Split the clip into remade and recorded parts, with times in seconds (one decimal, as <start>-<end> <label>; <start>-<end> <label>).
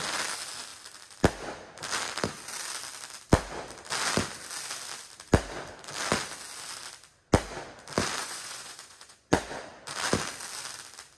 0.0-8.2 recorded; 8.2-9.7 remade; 9.7-11.2 recorded